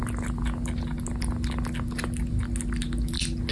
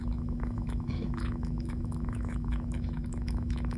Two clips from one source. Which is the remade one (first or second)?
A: second